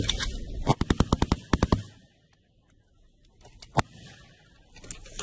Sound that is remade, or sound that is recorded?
recorded